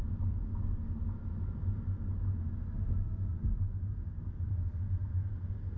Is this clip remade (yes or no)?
no